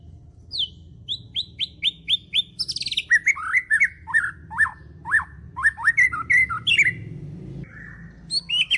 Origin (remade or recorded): recorded